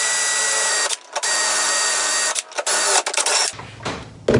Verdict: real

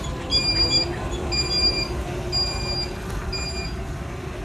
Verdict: real